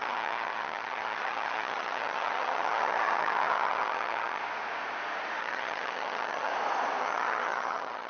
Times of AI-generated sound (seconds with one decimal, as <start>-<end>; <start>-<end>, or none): 0.0-4.4; 5.4-6.5; 7.0-8.1